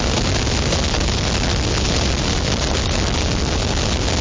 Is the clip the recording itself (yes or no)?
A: yes